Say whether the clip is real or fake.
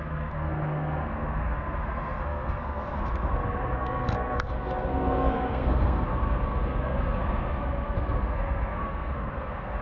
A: fake